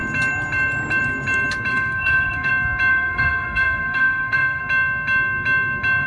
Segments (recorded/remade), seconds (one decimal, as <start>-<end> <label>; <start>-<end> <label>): 0.0-1.7 recorded; 1.7-2.5 remade; 2.5-2.9 recorded; 2.9-4.6 remade; 4.6-6.1 recorded